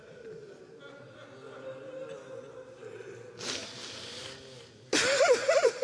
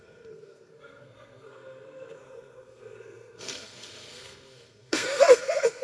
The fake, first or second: second